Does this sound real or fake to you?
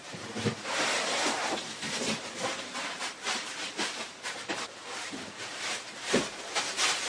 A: fake